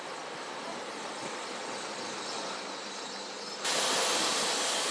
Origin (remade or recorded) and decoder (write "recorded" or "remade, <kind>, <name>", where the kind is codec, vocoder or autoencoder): recorded